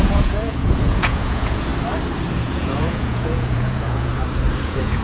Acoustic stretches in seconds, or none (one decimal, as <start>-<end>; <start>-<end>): 1.7-2.4; 4.1-4.6